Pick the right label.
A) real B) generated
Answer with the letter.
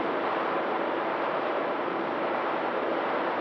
B